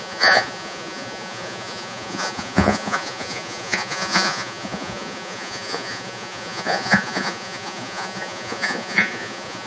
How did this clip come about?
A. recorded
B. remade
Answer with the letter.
B